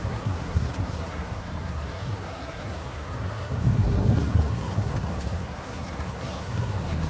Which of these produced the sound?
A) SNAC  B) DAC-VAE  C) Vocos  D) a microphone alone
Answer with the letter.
A